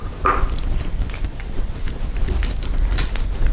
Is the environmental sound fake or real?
fake